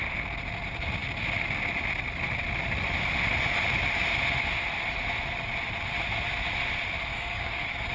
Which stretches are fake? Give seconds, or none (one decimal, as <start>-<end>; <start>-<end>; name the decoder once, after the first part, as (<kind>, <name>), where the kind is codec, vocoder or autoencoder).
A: 7.1-7.9 (codec, DAC)